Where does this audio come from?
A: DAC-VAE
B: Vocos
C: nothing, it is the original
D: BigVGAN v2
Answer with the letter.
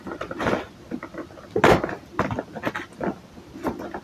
C